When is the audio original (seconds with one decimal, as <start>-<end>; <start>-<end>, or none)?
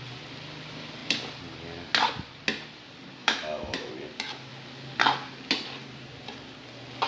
0.0-3.2; 3.9-7.1